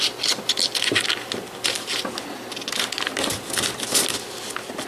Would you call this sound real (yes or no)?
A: yes